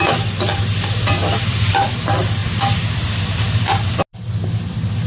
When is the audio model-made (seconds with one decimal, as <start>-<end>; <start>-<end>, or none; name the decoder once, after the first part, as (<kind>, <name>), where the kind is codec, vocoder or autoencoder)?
1.2-1.7 (vocoder, BigVGAN v2); 2.4-4.0

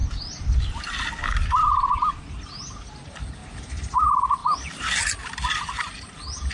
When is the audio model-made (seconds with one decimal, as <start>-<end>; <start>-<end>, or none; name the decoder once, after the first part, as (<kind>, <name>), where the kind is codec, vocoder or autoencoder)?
none

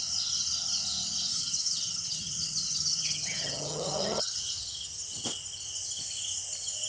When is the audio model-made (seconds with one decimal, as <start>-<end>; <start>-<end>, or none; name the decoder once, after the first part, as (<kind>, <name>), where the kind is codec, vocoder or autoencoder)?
1.3-4.4 (vocoder, HiFi-GAN)

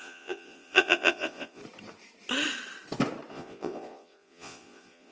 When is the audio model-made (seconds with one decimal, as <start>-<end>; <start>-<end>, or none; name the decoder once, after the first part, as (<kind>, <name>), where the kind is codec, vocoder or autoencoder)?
0.0-1.6 (vocoder, Vocos); 3.3-5.1

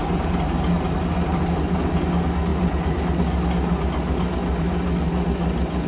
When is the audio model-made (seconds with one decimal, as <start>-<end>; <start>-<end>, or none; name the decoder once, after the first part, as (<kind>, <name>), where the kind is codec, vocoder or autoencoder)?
none

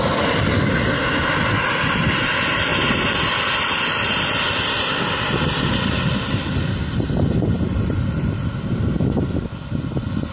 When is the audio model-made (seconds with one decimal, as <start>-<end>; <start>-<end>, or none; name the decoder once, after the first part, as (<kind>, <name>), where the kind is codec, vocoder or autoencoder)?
none

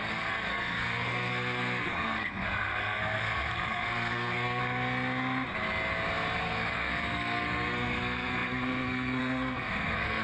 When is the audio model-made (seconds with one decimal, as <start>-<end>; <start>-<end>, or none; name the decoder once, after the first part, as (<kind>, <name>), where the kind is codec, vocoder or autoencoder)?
0.0-4.6 (codec, SNAC); 6.4-10.2

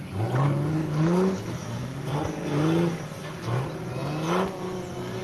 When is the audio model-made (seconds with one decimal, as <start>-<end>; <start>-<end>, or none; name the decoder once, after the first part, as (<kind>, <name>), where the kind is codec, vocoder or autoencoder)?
0.7-1.6 (codec, HILCodec)